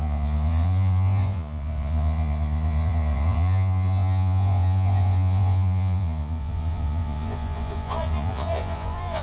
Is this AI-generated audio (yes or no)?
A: yes